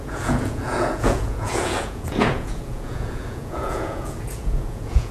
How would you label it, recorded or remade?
remade